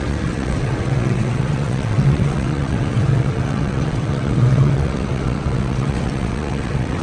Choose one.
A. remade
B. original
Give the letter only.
A